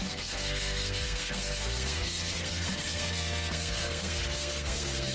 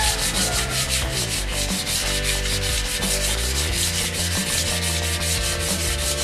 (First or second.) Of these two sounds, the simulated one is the first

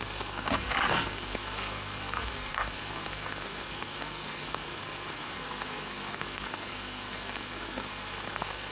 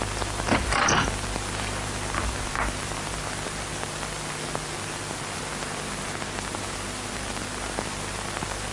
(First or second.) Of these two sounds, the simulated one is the first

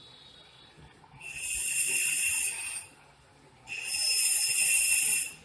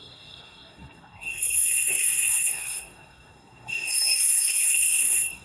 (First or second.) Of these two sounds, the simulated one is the second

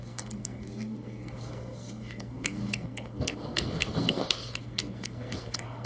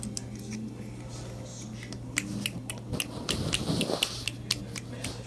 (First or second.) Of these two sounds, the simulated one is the first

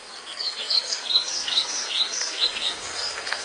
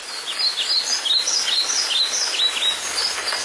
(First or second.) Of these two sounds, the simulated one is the first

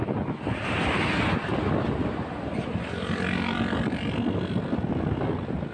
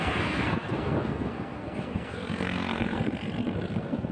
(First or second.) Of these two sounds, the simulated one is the second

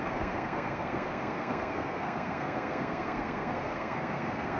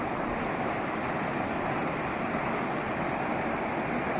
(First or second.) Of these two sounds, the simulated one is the first